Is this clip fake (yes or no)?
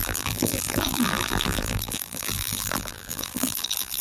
yes